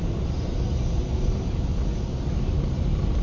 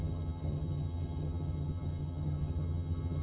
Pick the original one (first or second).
first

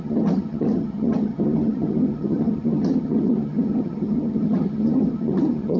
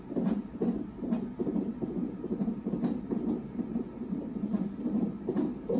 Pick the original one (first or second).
second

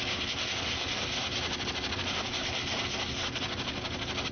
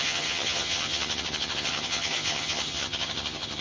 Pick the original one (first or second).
first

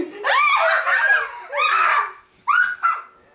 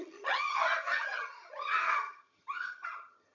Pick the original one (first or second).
first